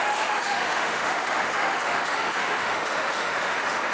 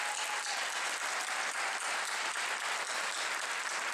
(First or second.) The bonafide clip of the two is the second